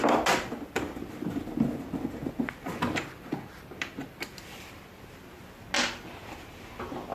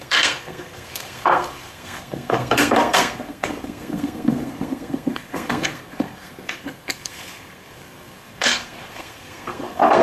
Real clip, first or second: first